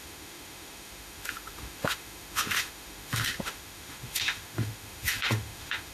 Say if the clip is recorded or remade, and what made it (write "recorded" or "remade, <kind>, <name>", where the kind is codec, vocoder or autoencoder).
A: remade, autoencoder, DAC-VAE